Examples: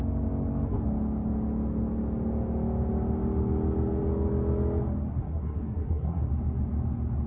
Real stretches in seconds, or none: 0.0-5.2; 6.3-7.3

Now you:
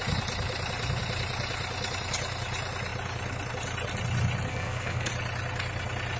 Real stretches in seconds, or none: 0.0-4.5; 5.1-6.2

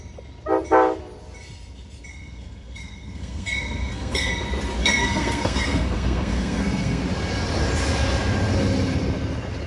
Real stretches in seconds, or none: 0.0-2.1; 4.3-4.8; 7.0-9.7

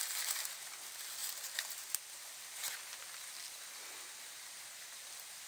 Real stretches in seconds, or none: 0.0-5.5

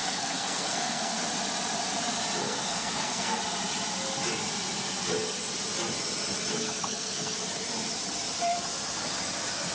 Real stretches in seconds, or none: 1.2-2.4; 3.4-6.5; 7.4-9.7

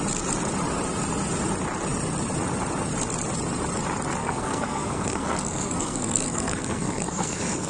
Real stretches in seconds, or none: 0.0-4.2